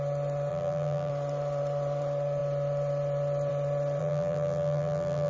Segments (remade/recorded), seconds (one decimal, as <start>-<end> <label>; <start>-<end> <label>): 0.0-0.5 recorded; 0.5-1.1 remade; 1.1-4.0 recorded; 4.0-5.3 remade